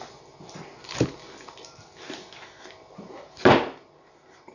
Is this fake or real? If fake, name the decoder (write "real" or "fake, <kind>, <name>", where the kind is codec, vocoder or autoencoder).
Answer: real